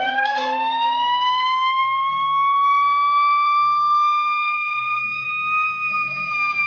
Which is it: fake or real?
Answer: fake